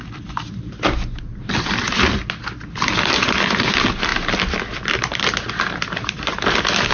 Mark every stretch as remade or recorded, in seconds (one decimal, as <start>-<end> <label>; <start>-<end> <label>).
0.0-6.9 recorded